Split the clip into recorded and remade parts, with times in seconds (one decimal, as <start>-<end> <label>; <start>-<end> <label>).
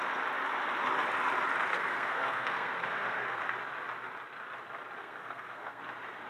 0.0-1.7 recorded; 1.7-3.4 remade; 3.4-5.0 recorded; 5.0-5.8 remade; 5.8-6.3 recorded